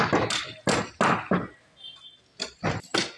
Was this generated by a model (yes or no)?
no